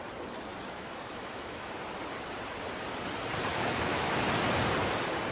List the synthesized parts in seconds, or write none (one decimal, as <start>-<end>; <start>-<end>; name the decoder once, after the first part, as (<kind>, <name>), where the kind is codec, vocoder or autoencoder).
0.5-1.7 (autoencoder, DAC-VAE); 3.5-4.2